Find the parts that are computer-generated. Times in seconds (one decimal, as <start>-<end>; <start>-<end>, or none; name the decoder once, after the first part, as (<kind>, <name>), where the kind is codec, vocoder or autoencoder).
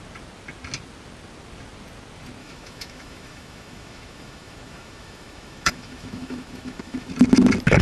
2.4-7.1 (autoencoder, DAC-VAE)